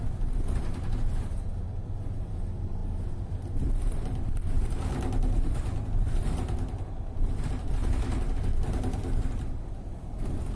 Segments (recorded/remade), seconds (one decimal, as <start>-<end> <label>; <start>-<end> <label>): 0.0-10.5 recorded